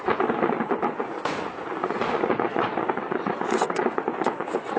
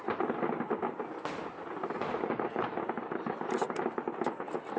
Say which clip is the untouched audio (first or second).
second